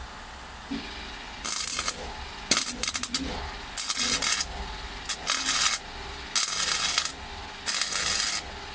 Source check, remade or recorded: recorded